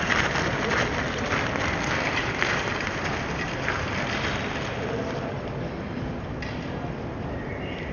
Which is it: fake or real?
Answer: real